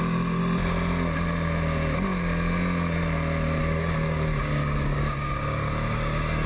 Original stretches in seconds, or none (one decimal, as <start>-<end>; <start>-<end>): 0.4-3.6